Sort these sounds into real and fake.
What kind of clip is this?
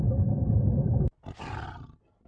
real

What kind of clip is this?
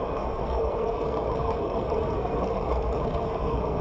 fake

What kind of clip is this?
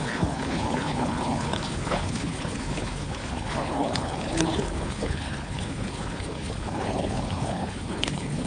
fake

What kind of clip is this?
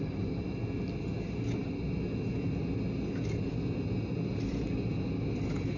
real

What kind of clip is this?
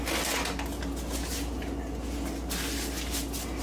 real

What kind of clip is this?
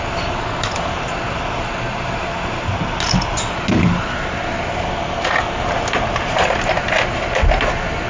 real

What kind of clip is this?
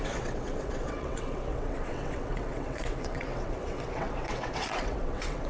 fake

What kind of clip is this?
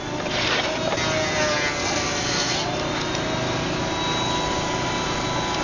real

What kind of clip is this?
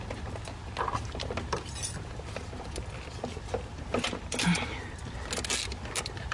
real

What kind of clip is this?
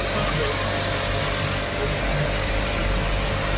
real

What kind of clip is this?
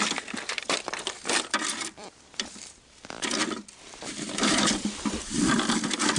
fake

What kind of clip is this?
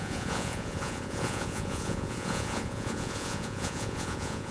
fake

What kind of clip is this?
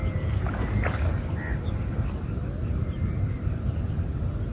real